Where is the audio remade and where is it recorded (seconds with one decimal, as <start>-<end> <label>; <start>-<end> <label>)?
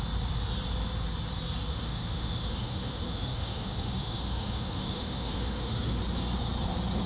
0.0-1.7 recorded; 1.7-6.0 remade; 6.0-7.1 recorded